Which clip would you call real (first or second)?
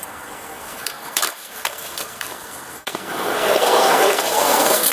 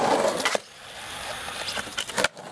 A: second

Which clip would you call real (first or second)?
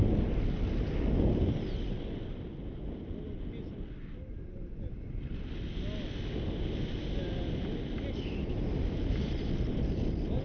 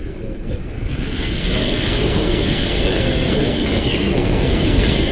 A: first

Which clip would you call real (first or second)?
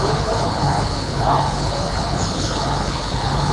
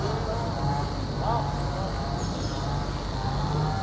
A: second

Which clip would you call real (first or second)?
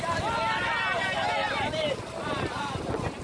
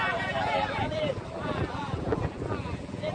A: first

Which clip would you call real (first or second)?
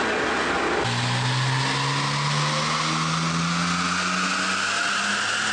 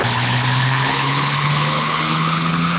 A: first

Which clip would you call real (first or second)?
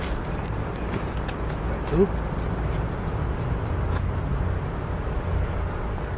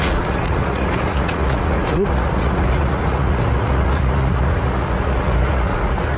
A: first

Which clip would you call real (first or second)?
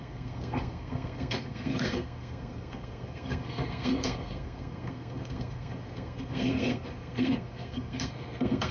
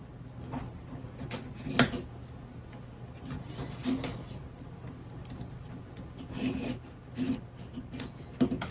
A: second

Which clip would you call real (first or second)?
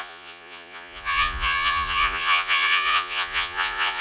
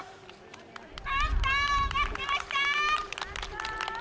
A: second